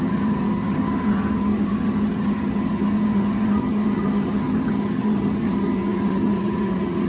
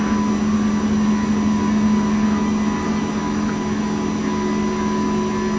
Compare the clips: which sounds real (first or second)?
second